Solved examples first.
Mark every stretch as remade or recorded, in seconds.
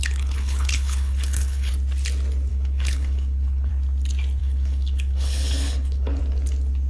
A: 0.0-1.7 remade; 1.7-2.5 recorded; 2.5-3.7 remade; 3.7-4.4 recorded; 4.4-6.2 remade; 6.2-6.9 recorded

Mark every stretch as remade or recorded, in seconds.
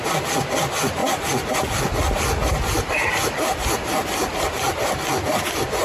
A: 0.0-5.8 recorded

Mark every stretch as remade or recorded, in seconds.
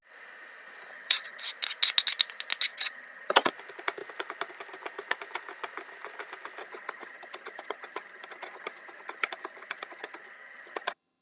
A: 0.0-0.9 recorded; 0.9-1.4 remade; 1.4-2.7 recorded; 2.7-3.5 remade; 3.5-6.6 recorded; 6.6-11.2 remade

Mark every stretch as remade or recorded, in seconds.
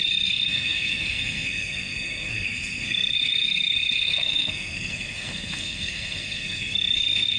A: 0.0-7.4 remade